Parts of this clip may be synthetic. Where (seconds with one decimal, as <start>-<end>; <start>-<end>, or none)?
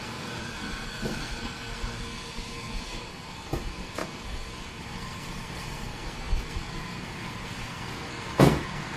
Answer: 0.0-9.0